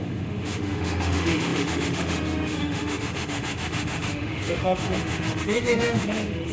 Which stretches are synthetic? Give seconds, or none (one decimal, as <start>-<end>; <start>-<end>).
0.0-6.5